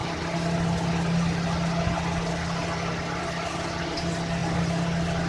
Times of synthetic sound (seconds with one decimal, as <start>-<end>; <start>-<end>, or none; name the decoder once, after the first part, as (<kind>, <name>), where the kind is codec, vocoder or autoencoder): none